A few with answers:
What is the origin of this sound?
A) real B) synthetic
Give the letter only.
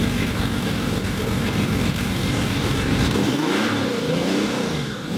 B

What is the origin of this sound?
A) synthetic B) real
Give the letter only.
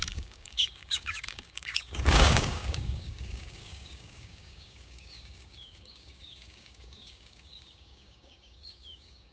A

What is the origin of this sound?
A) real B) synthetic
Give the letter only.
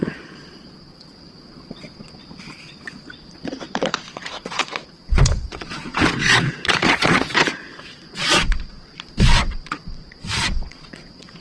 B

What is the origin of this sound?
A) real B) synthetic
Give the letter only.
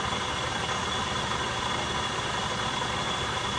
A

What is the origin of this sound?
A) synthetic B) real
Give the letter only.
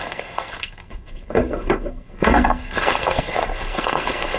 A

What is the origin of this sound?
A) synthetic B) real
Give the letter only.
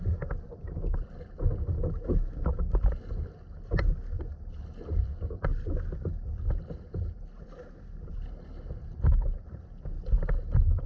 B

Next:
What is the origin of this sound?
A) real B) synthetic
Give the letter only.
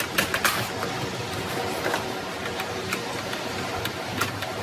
A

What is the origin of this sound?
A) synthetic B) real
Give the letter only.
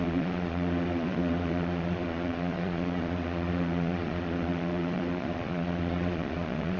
A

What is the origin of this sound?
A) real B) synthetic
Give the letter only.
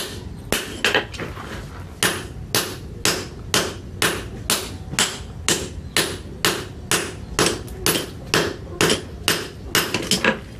A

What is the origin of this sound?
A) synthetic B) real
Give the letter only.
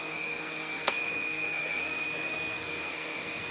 A